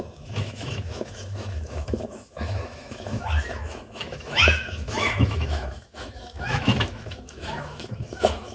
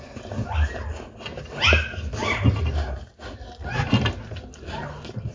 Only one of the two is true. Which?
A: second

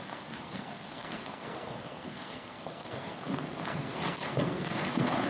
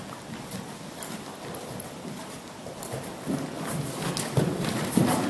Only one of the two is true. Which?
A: second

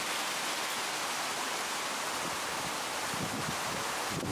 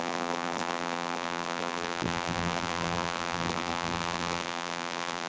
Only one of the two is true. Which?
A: first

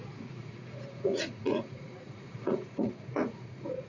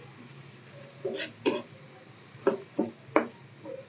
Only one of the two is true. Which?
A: second